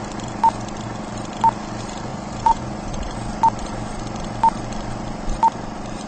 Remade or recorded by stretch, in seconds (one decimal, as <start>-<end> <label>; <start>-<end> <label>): 0.0-2.1 recorded; 2.1-2.9 remade; 2.9-6.1 recorded